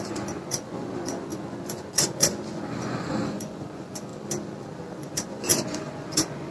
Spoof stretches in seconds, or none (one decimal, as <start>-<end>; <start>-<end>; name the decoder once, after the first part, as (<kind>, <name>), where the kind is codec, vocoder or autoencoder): 0.0-4.1 (vocoder, Vocos); 4.9-6.5